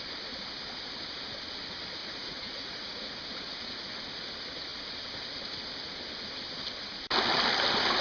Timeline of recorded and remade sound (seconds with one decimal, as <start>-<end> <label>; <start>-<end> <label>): 0.0-2.0 recorded; 2.0-3.2 remade; 3.2-8.0 recorded